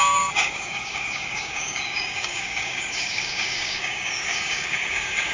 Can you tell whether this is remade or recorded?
remade